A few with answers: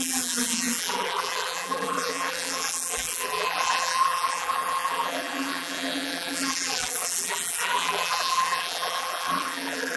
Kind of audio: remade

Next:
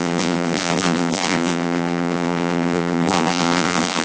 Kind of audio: remade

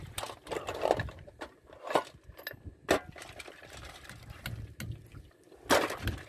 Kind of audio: recorded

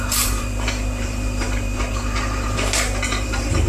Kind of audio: remade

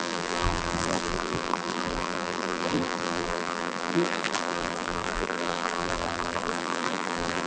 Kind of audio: remade